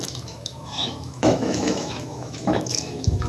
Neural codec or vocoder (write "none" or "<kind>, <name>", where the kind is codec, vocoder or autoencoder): autoencoder, DAC-VAE